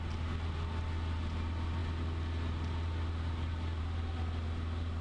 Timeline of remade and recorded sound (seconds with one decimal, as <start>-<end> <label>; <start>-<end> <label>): 0.0-5.0 recorded